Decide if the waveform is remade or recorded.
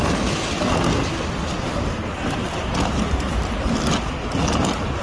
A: recorded